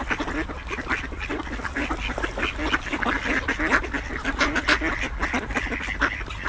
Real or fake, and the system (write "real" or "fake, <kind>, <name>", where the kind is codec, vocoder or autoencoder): real